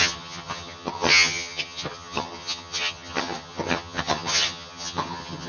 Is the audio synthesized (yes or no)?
yes